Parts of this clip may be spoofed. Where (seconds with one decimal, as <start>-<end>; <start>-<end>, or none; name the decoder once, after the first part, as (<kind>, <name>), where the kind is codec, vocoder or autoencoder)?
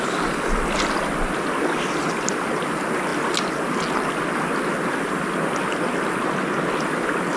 none